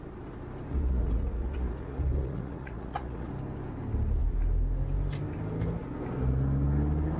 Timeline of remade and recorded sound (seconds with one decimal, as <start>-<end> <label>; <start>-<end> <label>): 0.0-0.7 recorded; 0.7-3.3 remade; 3.3-7.2 recorded